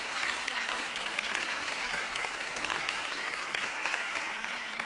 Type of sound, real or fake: fake